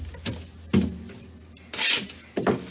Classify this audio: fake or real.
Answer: real